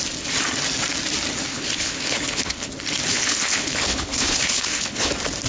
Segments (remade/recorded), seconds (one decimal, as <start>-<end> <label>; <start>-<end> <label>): 0.0-1.5 recorded; 1.5-2.7 remade; 2.7-3.1 recorded; 3.1-5.1 remade; 5.1-5.5 recorded